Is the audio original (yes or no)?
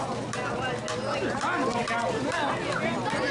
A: yes